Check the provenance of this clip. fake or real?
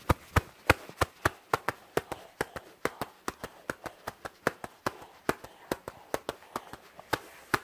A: real